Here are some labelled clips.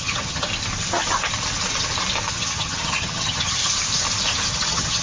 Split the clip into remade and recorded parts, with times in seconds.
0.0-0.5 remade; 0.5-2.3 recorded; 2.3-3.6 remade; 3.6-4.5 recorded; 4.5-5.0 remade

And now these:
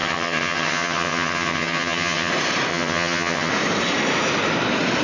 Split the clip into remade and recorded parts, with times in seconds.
0.0-2.3 remade; 2.3-2.7 recorded; 2.7-3.5 remade; 3.5-5.0 recorded

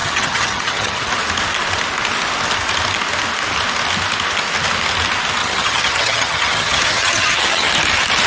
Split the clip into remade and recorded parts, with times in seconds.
0.0-1.1 remade; 1.1-5.4 recorded; 5.4-7.7 remade; 7.7-8.3 recorded

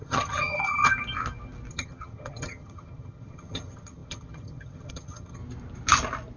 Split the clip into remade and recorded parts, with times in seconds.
0.0-0.9 remade; 0.9-1.7 recorded; 1.7-5.4 remade; 5.4-6.4 recorded

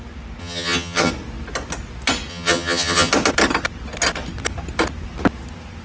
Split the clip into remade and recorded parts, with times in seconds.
0.0-0.4 recorded; 0.4-1.1 remade; 1.1-2.3 recorded; 2.3-3.1 remade; 3.1-5.8 recorded